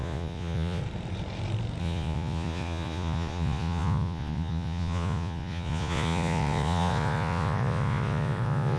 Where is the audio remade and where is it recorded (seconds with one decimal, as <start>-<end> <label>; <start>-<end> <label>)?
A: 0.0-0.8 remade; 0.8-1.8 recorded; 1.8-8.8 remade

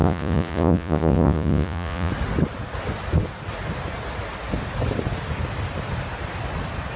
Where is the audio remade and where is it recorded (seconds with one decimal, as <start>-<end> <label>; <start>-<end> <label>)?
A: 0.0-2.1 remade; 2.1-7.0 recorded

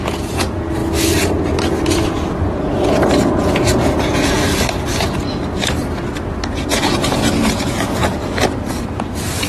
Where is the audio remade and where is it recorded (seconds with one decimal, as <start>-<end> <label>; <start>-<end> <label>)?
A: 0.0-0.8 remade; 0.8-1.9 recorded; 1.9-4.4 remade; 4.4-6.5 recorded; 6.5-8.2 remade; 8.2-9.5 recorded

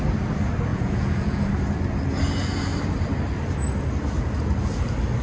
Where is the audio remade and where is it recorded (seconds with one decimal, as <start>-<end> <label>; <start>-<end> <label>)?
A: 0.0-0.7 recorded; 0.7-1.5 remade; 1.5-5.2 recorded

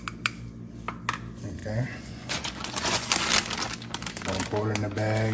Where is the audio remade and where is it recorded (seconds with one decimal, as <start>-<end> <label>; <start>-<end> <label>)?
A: 0.0-1.6 recorded; 1.6-3.1 remade; 3.1-5.3 recorded

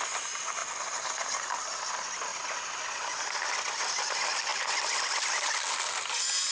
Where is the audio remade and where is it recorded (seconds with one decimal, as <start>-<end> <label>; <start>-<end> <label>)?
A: 0.0-6.5 recorded

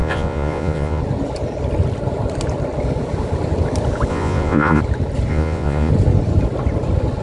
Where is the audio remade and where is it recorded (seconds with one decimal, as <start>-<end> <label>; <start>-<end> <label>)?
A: 0.0-1.0 remade; 1.0-4.1 recorded; 4.1-4.8 remade; 4.8-5.3 recorded; 5.3-5.9 remade; 5.9-7.2 recorded

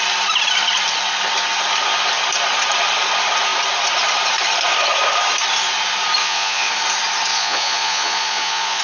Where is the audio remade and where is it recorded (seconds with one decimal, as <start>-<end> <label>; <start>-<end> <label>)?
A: 0.0-6.2 recorded; 6.2-6.7 remade; 6.7-7.3 recorded; 7.3-8.8 remade